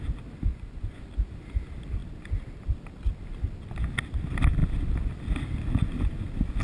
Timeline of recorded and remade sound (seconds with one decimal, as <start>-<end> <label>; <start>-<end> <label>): 0.0-0.5 recorded; 0.5-1.0 remade; 1.0-6.6 recorded